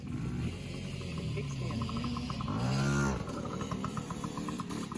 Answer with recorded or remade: recorded